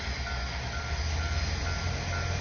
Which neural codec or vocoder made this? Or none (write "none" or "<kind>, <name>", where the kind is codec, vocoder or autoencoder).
none